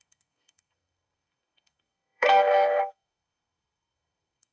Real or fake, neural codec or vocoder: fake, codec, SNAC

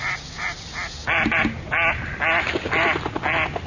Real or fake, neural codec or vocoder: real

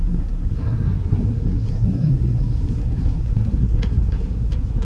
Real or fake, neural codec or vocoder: fake, codec, SNAC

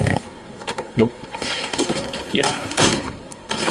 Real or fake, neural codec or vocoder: fake, codec, SNAC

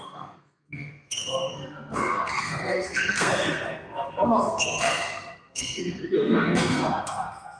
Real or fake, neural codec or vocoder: fake, codec, SNAC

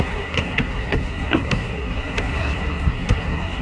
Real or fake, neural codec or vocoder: fake, codec, SNAC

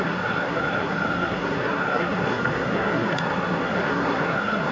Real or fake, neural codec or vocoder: fake, codec, SNAC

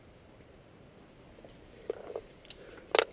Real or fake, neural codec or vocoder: real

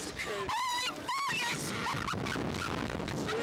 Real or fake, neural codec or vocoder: real